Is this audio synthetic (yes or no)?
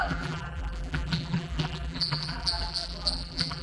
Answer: yes